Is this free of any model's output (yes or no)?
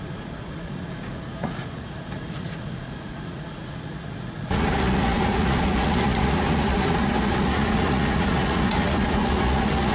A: no